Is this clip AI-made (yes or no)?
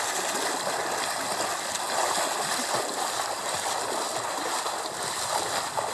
no